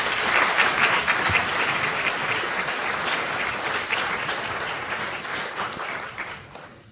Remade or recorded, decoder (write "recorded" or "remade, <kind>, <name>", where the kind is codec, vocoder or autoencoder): recorded